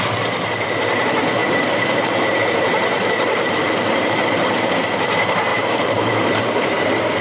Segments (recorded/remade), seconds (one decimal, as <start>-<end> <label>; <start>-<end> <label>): 0.0-1.4 recorded; 1.4-4.7 remade; 4.7-5.5 recorded; 5.5-6.7 remade; 6.7-7.2 recorded